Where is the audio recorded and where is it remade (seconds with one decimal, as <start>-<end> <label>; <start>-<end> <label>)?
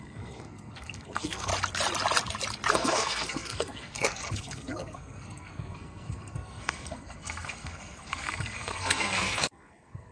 0.0-1.5 remade; 1.5-2.7 recorded; 2.7-10.1 remade